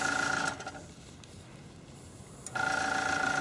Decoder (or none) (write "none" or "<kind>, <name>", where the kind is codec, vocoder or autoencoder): none